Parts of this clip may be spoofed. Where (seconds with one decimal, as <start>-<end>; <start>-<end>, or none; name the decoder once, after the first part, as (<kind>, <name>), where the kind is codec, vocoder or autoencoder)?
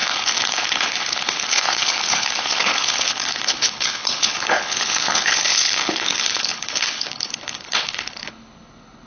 0.0-9.1 (codec, HILCodec)